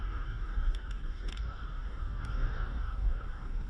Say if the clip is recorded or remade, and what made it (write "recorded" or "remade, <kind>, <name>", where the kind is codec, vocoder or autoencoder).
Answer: remade, codec, DAC